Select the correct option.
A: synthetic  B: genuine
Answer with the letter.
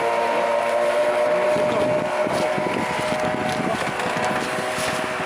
B